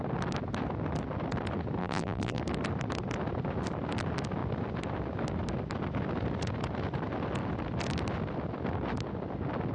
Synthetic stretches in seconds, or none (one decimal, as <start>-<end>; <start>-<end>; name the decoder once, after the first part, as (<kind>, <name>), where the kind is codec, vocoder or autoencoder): 1.8-2.4 (vocoder, BigVGAN v2)